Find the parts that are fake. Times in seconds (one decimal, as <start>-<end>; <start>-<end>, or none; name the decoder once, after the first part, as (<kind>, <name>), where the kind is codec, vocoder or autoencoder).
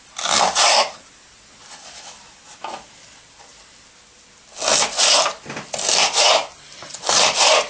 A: none